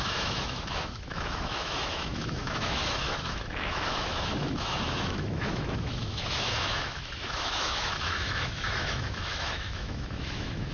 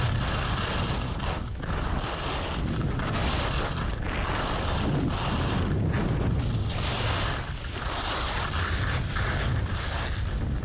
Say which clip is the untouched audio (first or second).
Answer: second